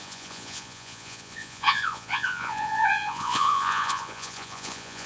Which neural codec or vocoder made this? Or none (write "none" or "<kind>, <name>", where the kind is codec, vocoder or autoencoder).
vocoder, Vocos